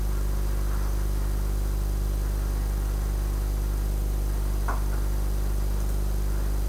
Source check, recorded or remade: recorded